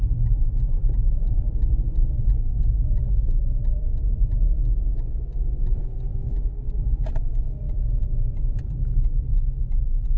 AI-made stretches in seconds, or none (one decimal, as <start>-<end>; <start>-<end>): none